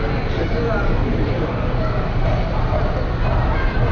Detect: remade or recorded recorded